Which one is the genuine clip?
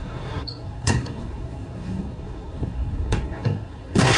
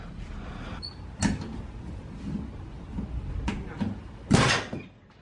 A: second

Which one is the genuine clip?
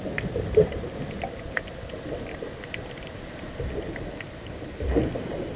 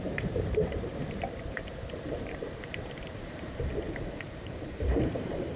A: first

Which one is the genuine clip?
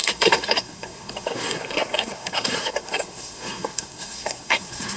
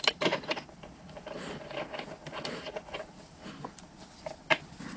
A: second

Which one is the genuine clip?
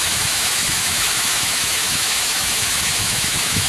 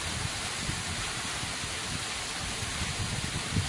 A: second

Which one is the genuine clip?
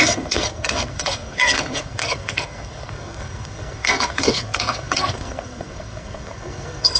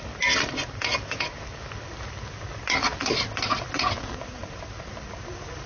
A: second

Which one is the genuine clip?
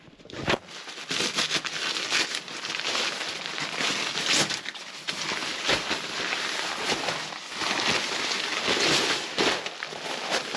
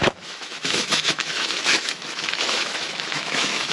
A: first